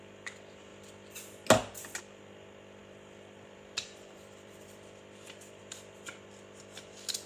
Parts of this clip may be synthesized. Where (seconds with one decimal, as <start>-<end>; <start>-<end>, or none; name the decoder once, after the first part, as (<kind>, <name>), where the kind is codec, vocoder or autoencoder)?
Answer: 2.8-5.6 (vocoder, BigVGAN v2)